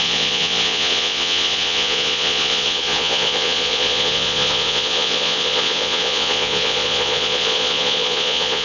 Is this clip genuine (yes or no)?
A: no